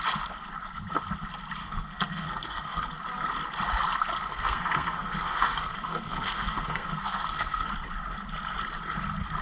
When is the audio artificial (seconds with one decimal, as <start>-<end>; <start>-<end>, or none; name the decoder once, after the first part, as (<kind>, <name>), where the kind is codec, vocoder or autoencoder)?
1.6-2.8 (codec, SNAC); 4.3-7.7